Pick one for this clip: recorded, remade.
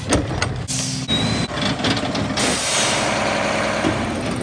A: recorded